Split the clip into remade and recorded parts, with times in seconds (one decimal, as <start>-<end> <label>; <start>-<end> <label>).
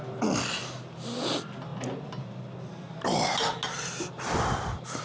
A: 0.0-5.0 recorded